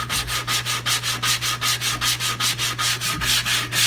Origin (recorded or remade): recorded